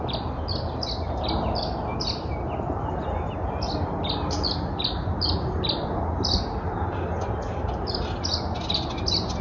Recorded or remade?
recorded